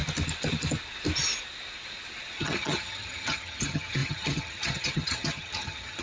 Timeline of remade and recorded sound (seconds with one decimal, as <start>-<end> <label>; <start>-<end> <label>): 0.0-2.4 recorded; 2.4-6.0 remade